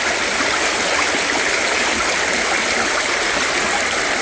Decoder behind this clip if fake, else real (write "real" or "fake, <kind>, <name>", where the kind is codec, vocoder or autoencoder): fake, vocoder, BigVGAN v2